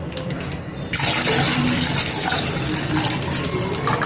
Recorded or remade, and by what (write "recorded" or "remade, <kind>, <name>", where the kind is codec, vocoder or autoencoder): recorded